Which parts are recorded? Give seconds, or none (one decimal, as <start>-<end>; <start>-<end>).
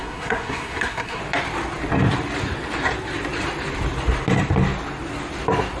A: 1.2-5.8